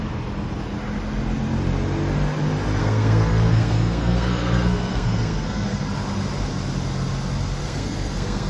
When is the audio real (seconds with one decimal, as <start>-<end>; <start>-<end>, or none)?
0.0-2.8; 5.9-7.6